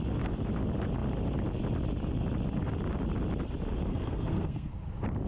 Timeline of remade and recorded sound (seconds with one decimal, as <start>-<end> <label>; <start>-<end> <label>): 0.0-3.9 recorded; 3.9-4.7 remade; 4.7-5.3 recorded